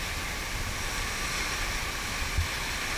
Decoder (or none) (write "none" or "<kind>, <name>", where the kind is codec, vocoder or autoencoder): none